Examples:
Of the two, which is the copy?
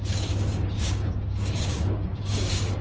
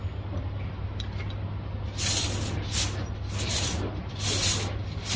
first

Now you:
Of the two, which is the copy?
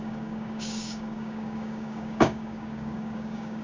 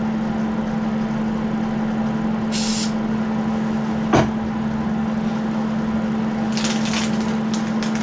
first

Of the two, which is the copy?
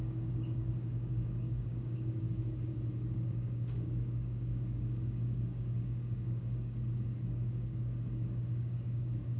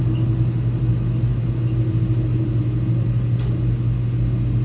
first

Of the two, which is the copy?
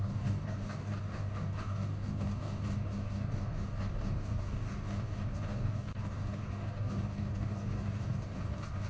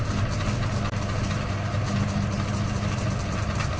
first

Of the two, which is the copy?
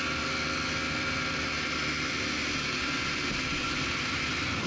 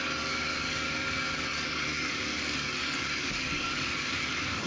second